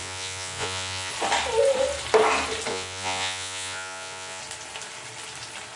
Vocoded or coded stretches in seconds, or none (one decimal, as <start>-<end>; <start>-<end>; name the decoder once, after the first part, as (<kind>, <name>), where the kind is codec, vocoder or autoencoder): 0.0-1.1 (vocoder, Vocos); 2.7-4.4